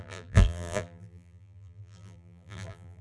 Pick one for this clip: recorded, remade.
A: remade